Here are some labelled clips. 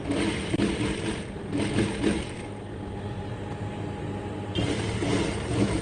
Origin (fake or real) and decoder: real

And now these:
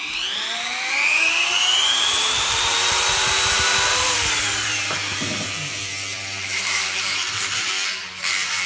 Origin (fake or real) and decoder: fake, vocoder, BigVGAN v2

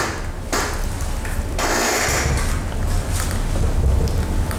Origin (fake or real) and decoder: real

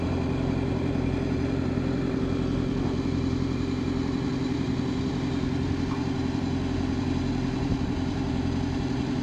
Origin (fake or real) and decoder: fake, vocoder, BigVGAN v2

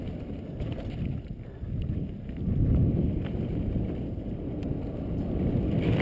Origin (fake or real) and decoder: fake, vocoder, BigVGAN v2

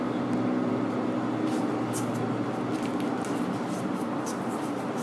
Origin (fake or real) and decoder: real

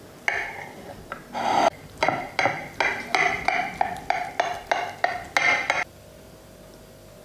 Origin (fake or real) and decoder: real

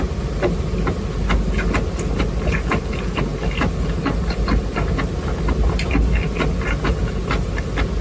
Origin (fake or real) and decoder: real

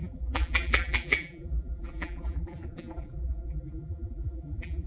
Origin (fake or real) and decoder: fake, vocoder, BigVGAN v2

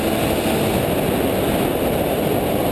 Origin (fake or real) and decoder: real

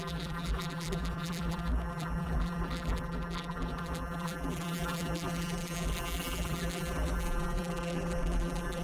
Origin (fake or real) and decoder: fake, vocoder, BigVGAN v2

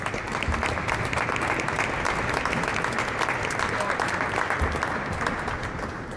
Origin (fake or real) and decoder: real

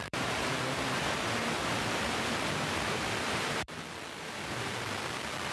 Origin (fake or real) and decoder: fake, vocoder, BigVGAN v2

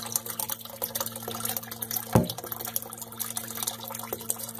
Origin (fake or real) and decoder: real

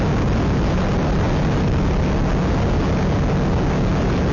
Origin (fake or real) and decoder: real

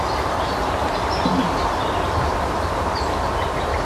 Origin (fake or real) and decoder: fake, vocoder, BigVGAN v2